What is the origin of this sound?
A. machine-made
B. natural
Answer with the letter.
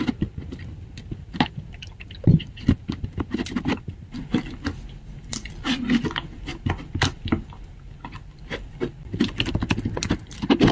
B